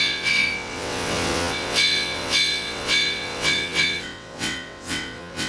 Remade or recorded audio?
remade